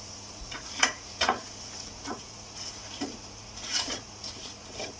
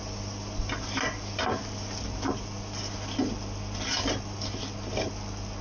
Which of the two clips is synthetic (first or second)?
first